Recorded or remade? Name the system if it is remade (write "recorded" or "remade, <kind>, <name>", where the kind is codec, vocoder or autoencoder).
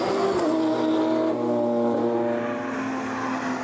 recorded